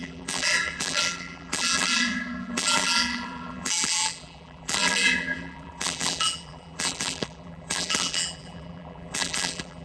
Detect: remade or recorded remade